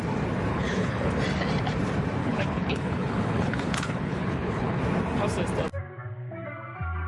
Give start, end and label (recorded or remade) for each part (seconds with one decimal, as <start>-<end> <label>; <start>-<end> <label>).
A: 0.0-0.5 recorded; 0.5-1.1 remade; 1.1-2.2 recorded; 2.2-4.8 remade; 4.8-7.1 recorded